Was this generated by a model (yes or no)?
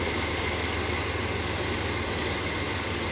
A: no